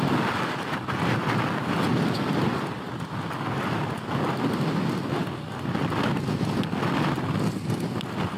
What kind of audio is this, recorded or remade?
recorded